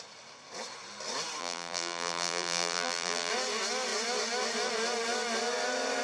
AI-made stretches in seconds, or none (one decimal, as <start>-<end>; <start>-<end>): 1.4-3.3